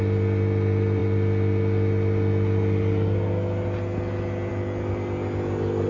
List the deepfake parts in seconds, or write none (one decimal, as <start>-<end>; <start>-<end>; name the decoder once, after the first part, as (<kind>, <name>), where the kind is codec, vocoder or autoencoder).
none